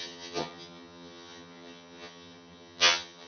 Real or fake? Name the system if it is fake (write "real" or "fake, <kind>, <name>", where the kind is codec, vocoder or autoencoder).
fake, vocoder, HiFi-GAN